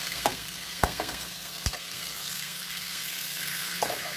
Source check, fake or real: fake